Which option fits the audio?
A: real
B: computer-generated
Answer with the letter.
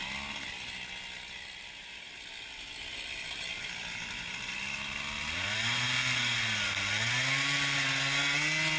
A